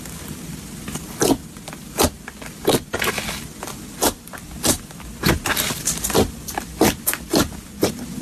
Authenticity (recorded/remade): recorded